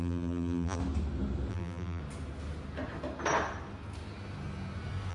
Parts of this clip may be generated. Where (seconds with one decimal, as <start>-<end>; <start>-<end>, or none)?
0.0-0.8; 1.5-2.0